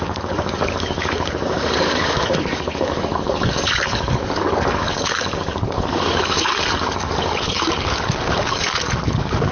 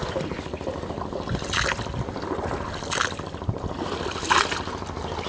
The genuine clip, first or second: second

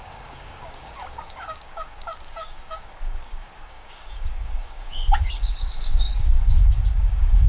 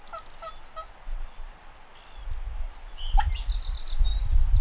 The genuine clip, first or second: second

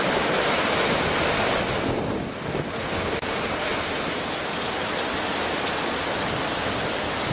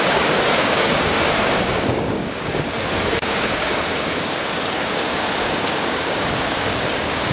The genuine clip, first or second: first